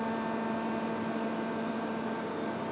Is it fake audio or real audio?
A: fake